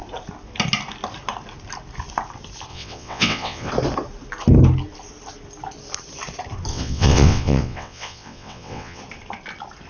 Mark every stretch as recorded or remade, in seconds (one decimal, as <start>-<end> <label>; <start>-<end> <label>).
0.0-2.7 recorded; 2.7-3.7 remade; 3.7-6.7 recorded; 6.7-9.0 remade; 9.0-9.9 recorded